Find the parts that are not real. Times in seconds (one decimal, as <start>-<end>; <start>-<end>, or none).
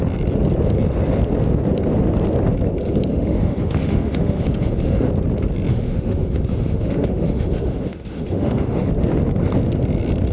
3.1-5.1; 5.7-8.9